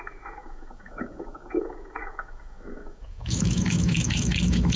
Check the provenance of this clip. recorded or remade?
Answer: remade